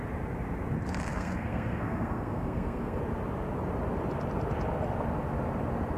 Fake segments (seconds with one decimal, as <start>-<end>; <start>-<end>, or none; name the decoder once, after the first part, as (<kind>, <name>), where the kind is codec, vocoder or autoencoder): 1.1-3.0 (codec, SNAC)